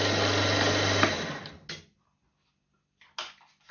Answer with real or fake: real